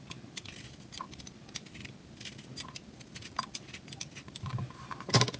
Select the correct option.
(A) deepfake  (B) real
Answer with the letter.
B